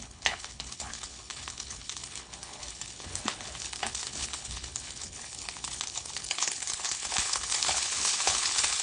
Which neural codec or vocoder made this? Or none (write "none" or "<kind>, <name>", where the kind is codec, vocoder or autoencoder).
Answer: codec, HILCodec